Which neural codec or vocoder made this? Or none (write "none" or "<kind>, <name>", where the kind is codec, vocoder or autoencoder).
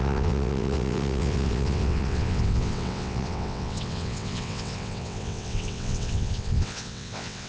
vocoder, WaveNeXt